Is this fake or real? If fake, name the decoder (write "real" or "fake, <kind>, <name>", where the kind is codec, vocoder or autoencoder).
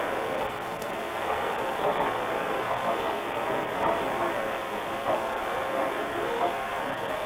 fake, codec, SNAC